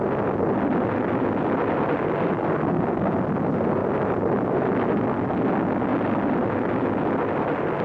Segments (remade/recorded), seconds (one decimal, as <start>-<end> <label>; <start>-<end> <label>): 0.0-3.8 recorded; 3.8-4.7 remade; 4.7-7.8 recorded